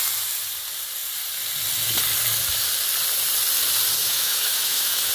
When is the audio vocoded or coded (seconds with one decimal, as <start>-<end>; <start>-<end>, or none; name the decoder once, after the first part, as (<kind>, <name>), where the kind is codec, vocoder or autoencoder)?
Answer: 4.0-5.1 (autoencoder, DAC-VAE)